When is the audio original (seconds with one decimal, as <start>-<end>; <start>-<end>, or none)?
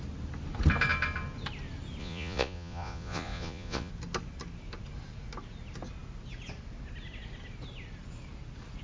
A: 0.0-2.0; 3.9-8.8